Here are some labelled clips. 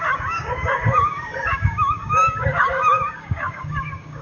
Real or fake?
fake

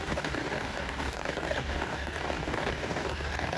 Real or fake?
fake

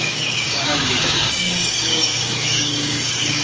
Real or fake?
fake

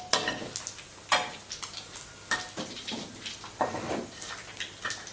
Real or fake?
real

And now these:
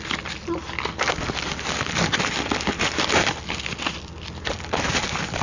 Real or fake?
real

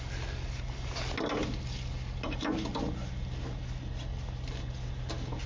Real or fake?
real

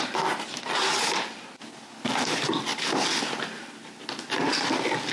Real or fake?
real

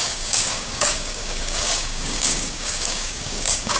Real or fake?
fake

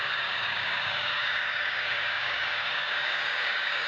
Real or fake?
fake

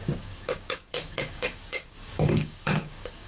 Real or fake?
fake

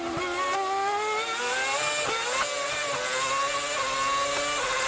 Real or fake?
real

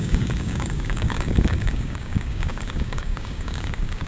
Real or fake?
fake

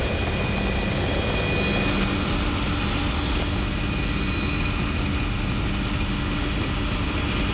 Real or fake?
real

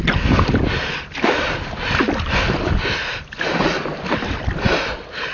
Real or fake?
real